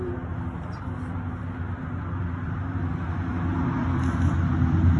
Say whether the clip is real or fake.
real